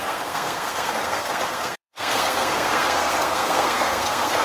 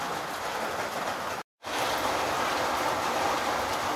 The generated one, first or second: first